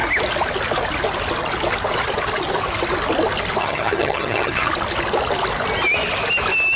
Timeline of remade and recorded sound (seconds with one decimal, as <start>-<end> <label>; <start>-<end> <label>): 0.0-3.6 recorded; 3.6-4.7 remade; 4.7-6.8 recorded